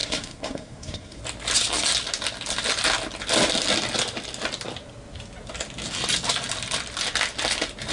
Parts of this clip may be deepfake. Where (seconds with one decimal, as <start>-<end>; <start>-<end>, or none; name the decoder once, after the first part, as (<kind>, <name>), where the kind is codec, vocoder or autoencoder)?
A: 0.0-1.2 (codec, SNAC)